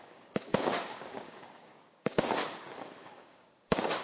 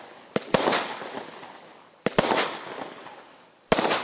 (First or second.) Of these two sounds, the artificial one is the first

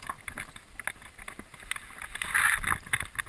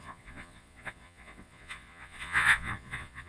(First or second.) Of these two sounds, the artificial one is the second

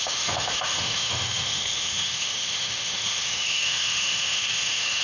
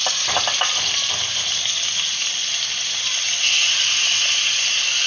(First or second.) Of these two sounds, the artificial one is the first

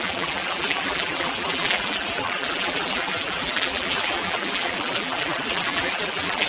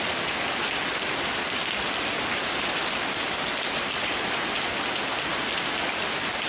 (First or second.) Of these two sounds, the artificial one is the first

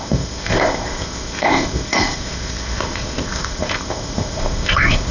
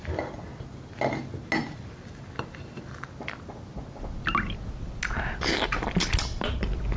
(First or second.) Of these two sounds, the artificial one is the first